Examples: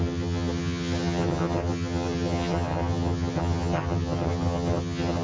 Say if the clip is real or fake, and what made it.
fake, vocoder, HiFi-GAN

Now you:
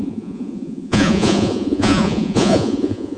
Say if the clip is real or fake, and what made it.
fake, vocoder, Vocos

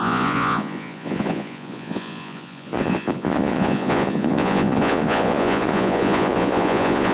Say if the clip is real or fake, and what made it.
fake, vocoder, Vocos